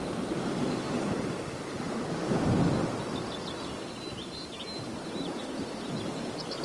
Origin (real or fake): real